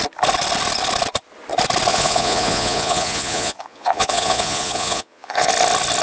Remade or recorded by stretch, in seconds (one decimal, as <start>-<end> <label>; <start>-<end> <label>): 0.0-1.9 recorded; 1.9-5.5 remade; 5.5-6.0 recorded